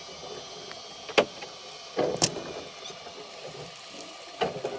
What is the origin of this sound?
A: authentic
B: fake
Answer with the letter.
A